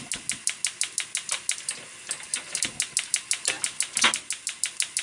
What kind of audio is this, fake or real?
real